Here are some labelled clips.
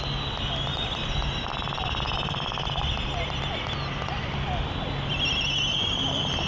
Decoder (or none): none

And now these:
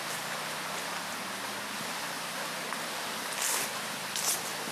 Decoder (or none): none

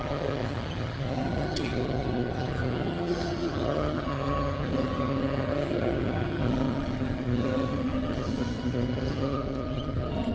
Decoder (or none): vocoder, HiFi-GAN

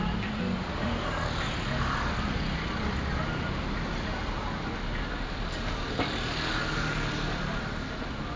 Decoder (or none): none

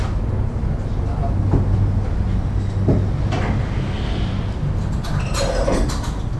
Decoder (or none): none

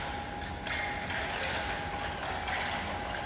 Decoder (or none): none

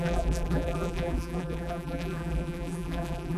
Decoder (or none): vocoder, BigVGAN v2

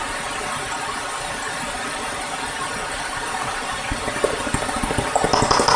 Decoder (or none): none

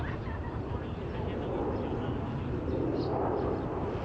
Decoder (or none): none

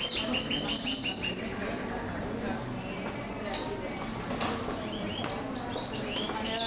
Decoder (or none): none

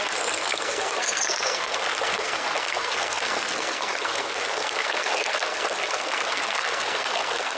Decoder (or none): codec, SNAC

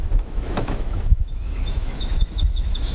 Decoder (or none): autoencoder, DAC-VAE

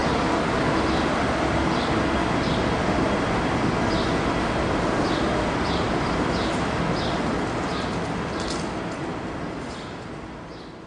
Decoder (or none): none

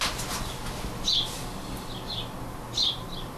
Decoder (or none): none